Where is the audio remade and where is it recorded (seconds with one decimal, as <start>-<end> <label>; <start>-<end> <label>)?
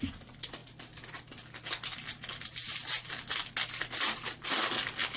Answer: 0.0-5.2 recorded